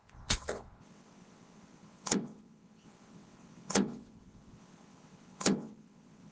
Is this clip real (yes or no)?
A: no